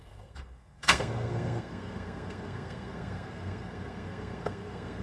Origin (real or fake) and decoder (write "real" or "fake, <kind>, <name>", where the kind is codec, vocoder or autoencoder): fake, codec, SNAC